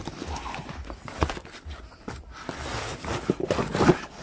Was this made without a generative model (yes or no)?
yes